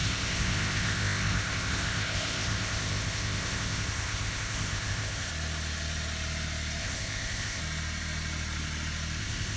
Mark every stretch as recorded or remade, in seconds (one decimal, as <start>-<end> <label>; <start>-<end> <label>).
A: 0.0-5.3 remade; 5.3-6.8 recorded; 6.8-7.6 remade; 7.6-9.2 recorded; 9.2-9.6 remade